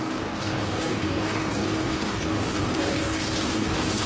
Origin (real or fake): fake